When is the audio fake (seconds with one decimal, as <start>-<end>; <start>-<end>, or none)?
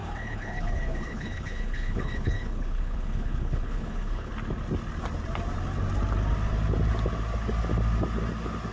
0.0-4.3